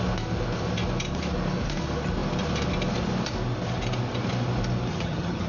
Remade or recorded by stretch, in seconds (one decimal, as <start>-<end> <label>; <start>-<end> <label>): 0.0-4.9 recorded; 4.9-5.5 remade